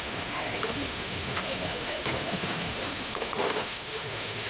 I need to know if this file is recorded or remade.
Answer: remade